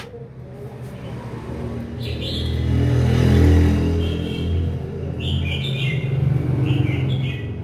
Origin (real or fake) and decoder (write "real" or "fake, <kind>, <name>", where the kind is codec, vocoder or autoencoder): real